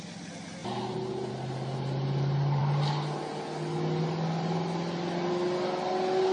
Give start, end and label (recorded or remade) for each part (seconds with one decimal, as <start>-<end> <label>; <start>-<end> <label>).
0.0-6.3 recorded